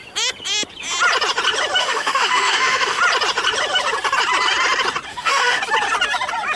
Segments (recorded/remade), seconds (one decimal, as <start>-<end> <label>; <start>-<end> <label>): 0.0-1.8 recorded; 1.8-3.0 remade; 3.0-5.1 recorded; 5.1-5.6 remade; 5.6-6.6 recorded